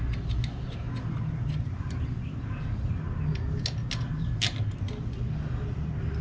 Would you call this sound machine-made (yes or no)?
no